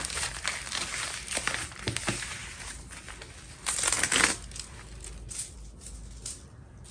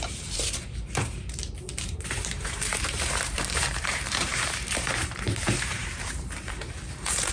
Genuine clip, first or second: first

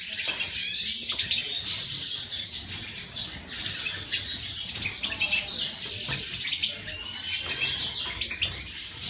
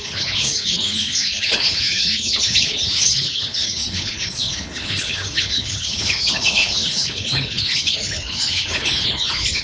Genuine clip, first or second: first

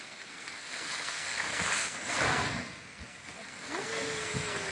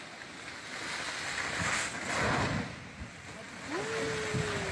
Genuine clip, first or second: second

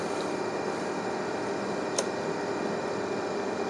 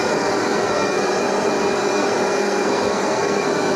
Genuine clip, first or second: first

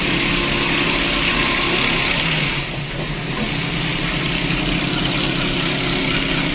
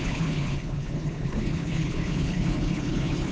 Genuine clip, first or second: first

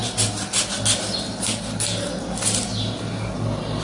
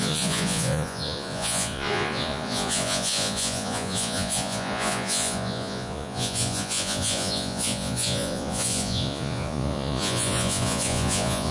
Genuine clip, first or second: first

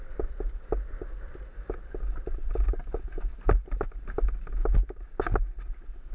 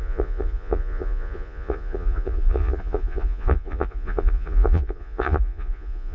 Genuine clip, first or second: first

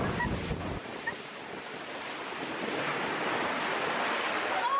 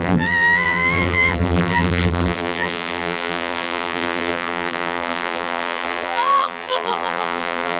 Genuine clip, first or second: first